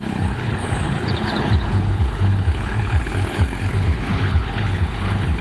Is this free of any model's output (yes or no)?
no